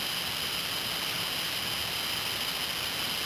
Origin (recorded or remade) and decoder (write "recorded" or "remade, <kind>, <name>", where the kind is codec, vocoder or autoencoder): recorded